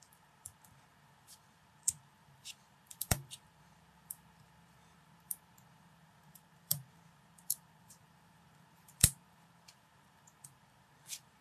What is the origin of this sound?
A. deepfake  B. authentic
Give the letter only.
A